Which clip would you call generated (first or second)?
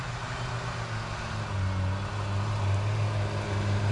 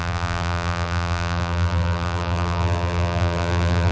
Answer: second